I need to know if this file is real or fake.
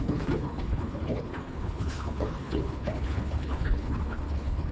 fake